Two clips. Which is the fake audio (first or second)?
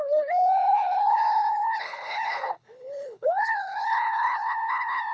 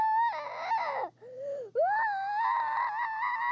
first